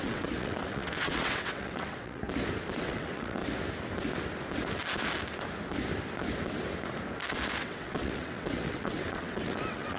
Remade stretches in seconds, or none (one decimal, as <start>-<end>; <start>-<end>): 0.0-2.2; 2.8-3.4; 7.6-10.0